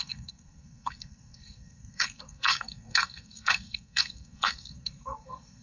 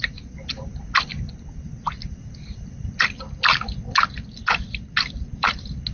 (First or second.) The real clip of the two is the second